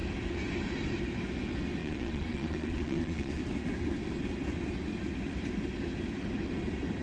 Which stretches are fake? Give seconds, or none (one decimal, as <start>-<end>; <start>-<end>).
1.8-3.4